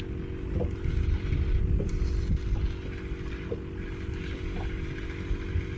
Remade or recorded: recorded